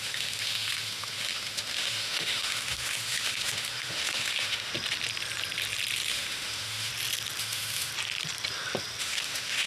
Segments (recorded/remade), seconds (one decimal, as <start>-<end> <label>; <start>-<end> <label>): 0.0-4.7 remade; 4.7-6.1 recorded; 6.1-6.9 remade; 6.9-7.4 recorded; 7.4-7.9 remade; 7.9-9.0 recorded; 9.0-9.7 remade